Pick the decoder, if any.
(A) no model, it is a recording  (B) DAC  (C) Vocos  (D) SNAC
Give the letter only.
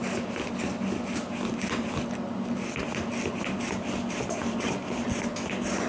A